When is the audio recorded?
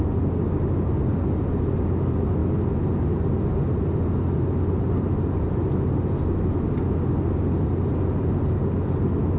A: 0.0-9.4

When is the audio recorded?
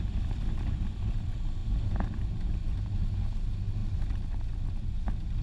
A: 0.0-5.4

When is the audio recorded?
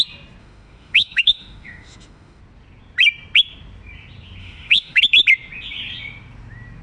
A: 0.0-0.4; 2.4-4.4; 5.0-6.8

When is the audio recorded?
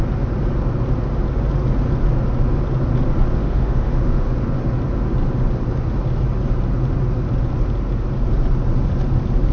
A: 0.0-3.4; 4.3-9.5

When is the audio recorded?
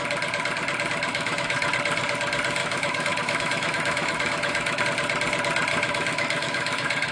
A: 0.0-1.1; 1.7-2.6; 4.8-5.7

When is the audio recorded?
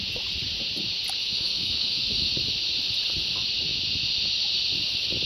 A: 0.0-1.2; 2.3-5.3